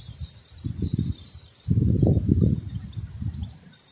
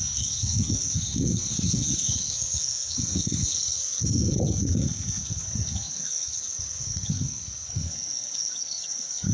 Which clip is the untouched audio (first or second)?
first